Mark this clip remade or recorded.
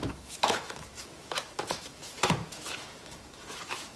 remade